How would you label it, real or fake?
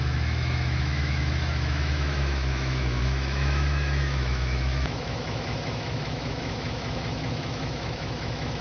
fake